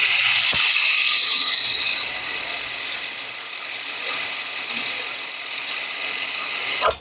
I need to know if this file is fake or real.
real